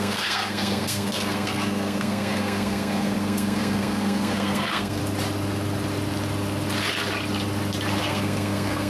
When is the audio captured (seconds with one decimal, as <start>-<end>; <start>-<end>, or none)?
5.0-8.0